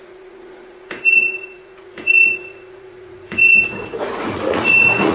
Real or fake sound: fake